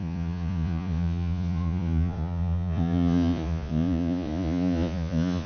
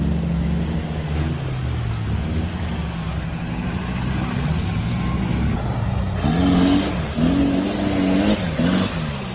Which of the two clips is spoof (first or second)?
first